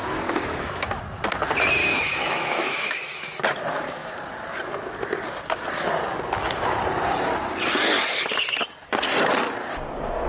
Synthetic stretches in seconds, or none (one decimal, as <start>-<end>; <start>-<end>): 0.0-1.0; 1.8-3.4